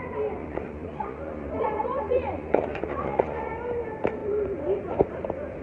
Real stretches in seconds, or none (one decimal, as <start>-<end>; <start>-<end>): 0.0-0.4; 3.5-5.6